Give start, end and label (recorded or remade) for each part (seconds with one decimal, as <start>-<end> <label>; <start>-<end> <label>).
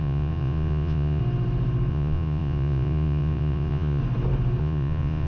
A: 0.0-1.2 remade; 1.2-1.9 recorded; 1.9-4.0 remade; 4.0-4.6 recorded; 4.6-5.3 remade